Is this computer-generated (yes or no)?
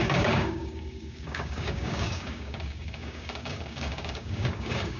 yes